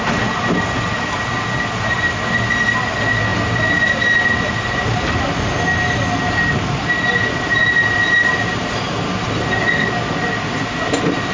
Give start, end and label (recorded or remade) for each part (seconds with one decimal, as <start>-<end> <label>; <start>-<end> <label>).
0.0-11.3 recorded